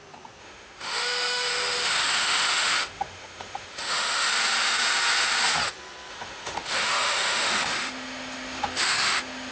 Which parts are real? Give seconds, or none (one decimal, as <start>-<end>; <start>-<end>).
0.0-0.4; 4.3-6.1